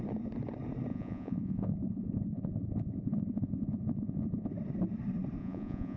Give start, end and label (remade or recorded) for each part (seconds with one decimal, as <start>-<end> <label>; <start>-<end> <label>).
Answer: 0.0-0.9 recorded; 0.9-4.5 remade; 4.5-5.4 recorded; 5.4-6.0 remade